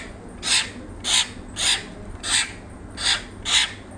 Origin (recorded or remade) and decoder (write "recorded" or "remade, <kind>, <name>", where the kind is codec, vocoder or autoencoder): recorded